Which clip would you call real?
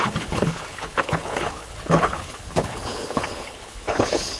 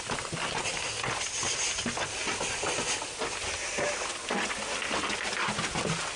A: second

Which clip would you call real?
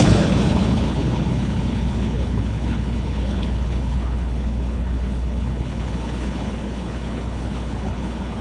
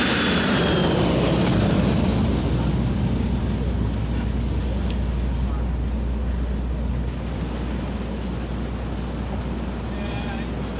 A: second